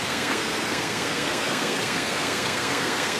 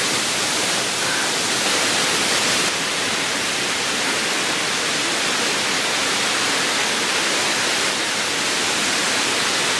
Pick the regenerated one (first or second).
first